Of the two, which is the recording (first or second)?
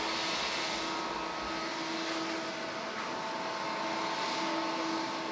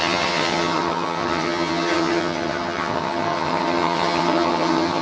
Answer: first